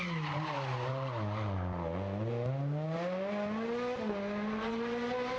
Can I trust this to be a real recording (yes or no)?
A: yes